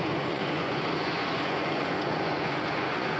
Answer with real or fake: fake